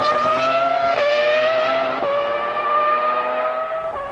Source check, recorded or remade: recorded